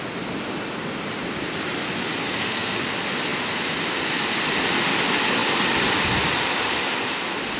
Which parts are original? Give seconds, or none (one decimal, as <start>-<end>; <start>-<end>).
0.0-2.2; 2.8-7.6